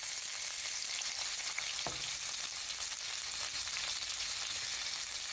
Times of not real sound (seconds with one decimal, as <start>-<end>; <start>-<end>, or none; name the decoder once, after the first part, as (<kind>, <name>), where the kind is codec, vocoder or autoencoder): none